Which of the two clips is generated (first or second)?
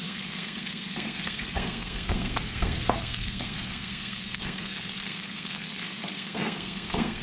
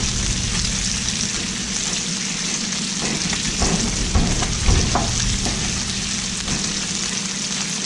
first